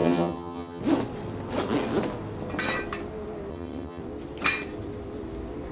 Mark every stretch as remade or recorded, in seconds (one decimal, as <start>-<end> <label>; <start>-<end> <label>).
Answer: 0.0-0.8 remade; 0.8-3.5 recorded; 3.5-4.0 remade; 4.0-5.7 recorded